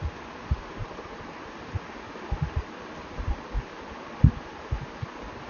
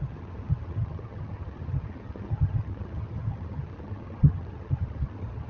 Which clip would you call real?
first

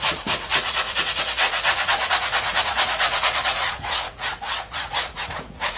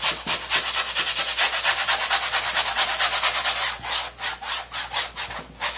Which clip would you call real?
second